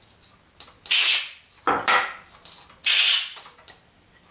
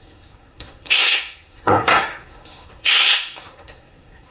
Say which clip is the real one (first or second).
first